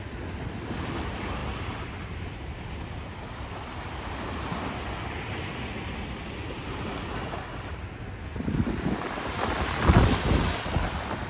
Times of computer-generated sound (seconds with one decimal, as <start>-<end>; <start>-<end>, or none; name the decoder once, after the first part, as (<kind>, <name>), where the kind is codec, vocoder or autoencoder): none